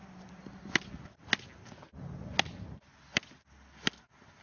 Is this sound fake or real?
real